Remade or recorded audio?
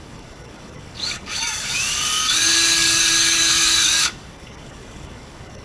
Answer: remade